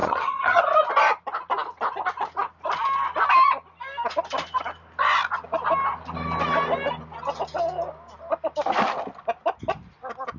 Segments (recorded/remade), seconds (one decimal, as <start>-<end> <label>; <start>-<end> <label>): 0.0-0.6 remade; 0.6-10.4 recorded